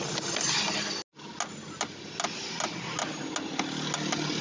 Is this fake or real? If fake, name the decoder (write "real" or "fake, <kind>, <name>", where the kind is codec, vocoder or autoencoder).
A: real